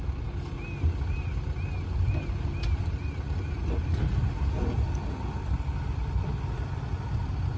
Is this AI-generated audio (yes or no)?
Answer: no